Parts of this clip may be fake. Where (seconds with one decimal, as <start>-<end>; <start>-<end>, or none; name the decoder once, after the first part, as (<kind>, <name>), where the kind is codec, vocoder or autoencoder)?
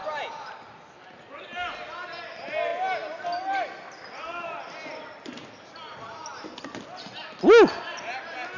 none